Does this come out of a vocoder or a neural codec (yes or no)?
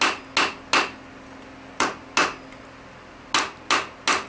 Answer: no